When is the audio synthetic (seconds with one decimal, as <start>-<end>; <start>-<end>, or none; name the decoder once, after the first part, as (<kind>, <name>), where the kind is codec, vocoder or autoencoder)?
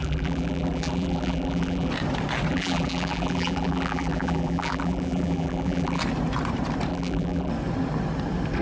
0.0-1.9 (vocoder, BigVGAN v2); 2.5-6.0; 6.9-7.5